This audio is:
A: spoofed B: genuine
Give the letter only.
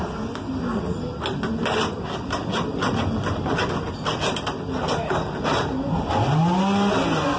B